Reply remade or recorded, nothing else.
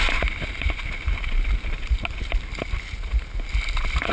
recorded